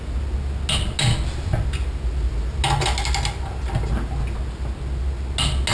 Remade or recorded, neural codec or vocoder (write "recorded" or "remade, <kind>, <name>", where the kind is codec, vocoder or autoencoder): recorded